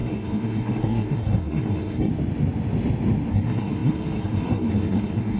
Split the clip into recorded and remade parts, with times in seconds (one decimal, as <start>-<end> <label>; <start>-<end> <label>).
0.0-2.1 remade; 2.1-3.3 recorded; 3.3-5.4 remade